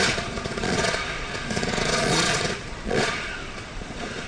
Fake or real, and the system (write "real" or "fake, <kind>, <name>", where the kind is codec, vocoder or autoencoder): fake, vocoder, Vocos